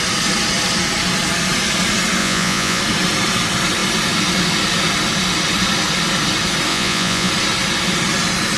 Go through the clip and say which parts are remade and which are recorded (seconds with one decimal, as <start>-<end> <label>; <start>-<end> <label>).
0.0-2.2 recorded; 2.2-2.8 remade; 2.8-6.7 recorded; 6.7-7.3 remade; 7.3-8.6 recorded